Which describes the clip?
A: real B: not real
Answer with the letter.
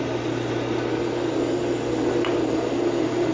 A